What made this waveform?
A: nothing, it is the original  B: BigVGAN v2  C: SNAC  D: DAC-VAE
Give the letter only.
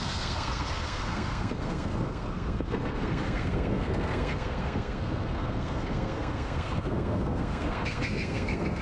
C